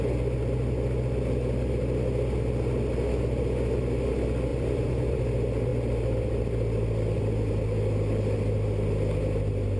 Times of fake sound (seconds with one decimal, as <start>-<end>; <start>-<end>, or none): 4.5-5.2; 5.7-9.8